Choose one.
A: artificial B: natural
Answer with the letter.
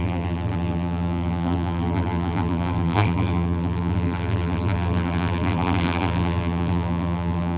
A